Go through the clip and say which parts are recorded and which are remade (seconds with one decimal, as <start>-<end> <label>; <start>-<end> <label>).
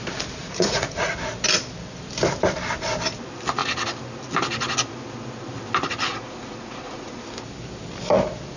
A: 0.0-0.4 recorded; 0.4-1.1 remade; 1.1-6.1 recorded; 6.1-7.2 remade; 7.2-8.6 recorded